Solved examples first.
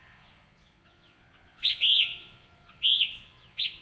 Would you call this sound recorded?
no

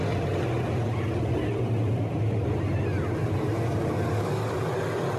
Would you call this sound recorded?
yes